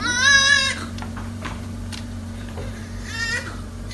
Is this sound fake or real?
fake